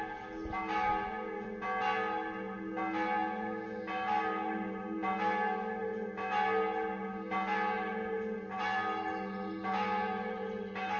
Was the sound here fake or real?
real